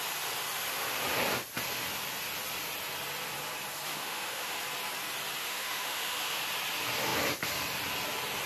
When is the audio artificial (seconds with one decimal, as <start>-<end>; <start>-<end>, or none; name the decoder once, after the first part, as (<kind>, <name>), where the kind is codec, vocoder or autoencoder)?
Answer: 3.9-4.6 (autoencoder, DAC-VAE); 5.4-6.4